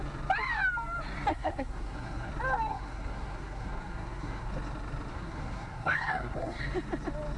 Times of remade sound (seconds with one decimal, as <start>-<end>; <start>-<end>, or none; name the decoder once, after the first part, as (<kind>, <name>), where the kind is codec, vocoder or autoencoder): 1.3-2.3 (codec, SNAC); 2.7-4.5; 5.1-6.6